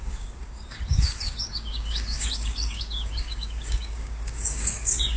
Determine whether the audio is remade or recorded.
remade